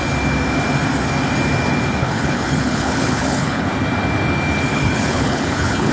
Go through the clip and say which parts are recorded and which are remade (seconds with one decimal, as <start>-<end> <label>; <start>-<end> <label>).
0.0-2.0 recorded; 2.0-3.7 remade; 3.7-4.7 recorded; 4.7-5.9 remade